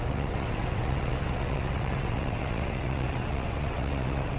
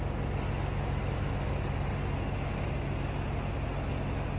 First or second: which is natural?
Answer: second